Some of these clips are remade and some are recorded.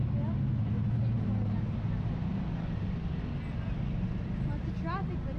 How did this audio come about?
recorded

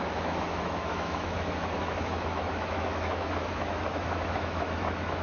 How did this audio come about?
remade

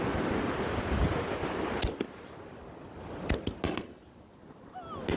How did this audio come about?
recorded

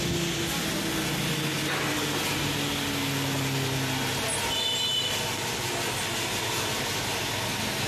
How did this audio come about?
recorded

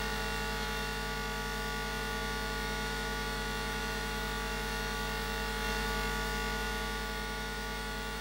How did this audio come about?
remade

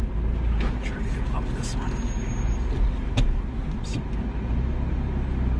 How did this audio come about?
recorded